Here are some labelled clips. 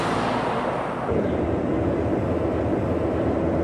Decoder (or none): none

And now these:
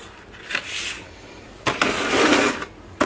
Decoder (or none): none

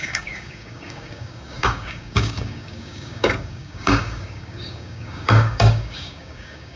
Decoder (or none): codec, DAC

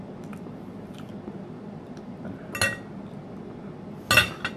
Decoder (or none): none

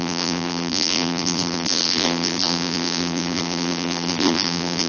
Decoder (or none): vocoder, BigVGAN v2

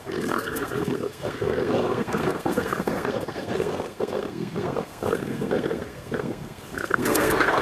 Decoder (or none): codec, SNAC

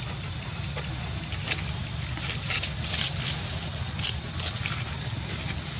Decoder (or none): none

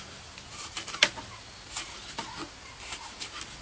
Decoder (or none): none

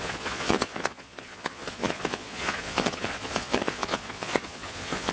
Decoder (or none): vocoder, Vocos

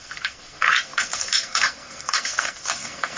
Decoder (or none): codec, SNAC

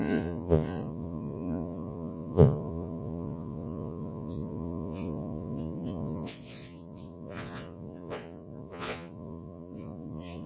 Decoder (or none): vocoder, Vocos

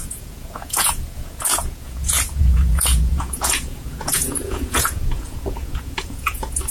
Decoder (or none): vocoder, Vocos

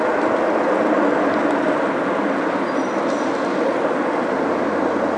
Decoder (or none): none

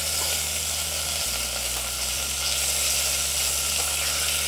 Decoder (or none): none